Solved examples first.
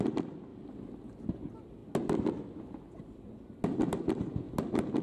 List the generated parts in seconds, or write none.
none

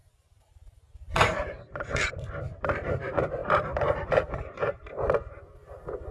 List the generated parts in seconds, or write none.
0.0-2.1 (vocoder, BigVGAN v2); 3.4-4.9

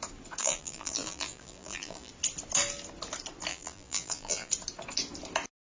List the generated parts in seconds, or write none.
0.4-2.1 (vocoder, BigVGAN v2); 3.5-4.5